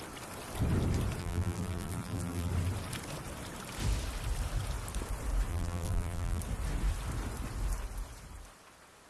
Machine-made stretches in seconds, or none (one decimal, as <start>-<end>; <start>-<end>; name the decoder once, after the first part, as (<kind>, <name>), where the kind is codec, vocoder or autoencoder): 1.2-2.5 (vocoder, BigVGAN v2); 5.5-6.4